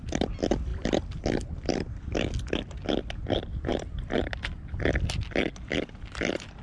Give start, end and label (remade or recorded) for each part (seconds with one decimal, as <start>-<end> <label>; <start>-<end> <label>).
0.0-6.6 recorded